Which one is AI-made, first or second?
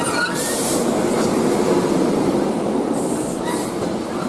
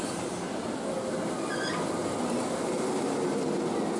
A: first